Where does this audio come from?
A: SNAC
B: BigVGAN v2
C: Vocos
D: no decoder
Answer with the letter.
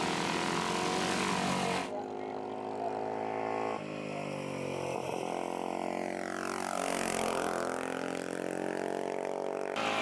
D